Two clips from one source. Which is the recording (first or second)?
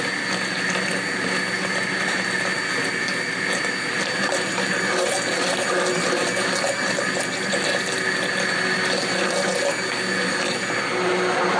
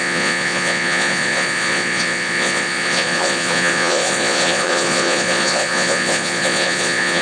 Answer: first